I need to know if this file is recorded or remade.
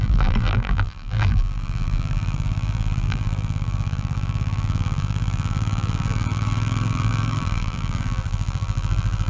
remade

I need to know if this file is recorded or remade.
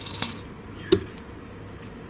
remade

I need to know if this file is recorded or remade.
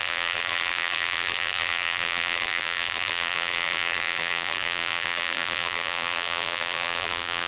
remade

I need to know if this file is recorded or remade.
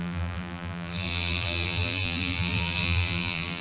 remade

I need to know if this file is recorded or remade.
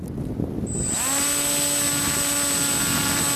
recorded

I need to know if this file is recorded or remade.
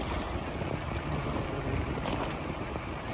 recorded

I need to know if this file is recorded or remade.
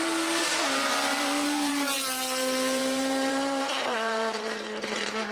remade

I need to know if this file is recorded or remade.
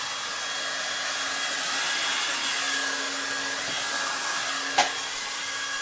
recorded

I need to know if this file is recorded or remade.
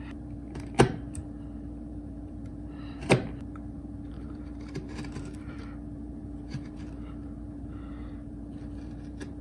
remade